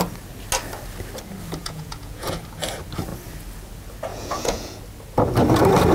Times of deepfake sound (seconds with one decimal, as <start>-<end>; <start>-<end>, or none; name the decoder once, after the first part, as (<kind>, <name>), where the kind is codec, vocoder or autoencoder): 1.6-2.4 (vocoder, Vocos); 4.1-4.8